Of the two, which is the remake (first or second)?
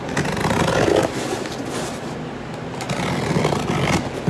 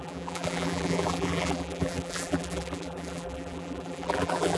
second